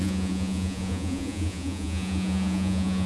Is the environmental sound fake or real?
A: fake